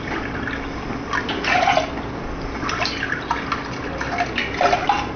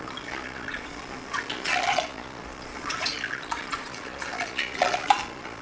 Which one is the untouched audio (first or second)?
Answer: first